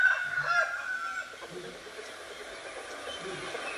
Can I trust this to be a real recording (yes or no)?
yes